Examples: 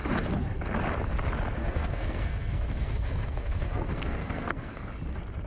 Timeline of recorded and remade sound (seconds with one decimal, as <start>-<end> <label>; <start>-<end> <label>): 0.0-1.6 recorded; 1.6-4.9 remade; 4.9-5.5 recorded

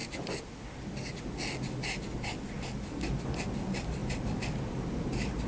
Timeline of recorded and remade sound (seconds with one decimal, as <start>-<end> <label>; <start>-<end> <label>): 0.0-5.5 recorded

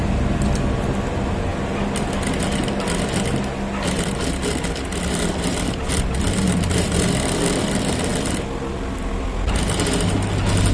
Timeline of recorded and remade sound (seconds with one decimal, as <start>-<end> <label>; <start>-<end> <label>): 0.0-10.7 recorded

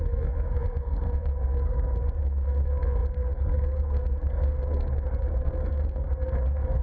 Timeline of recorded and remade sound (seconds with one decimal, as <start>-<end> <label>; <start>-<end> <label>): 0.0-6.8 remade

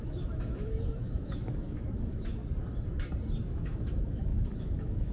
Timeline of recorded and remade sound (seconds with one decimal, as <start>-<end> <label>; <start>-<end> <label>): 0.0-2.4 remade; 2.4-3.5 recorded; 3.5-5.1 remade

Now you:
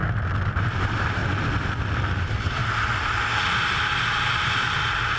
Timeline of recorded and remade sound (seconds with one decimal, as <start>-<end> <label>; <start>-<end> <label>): 0.0-0.5 recorded; 0.5-1.2 remade; 1.2-1.7 recorded; 1.7-2.6 remade; 2.6-5.2 recorded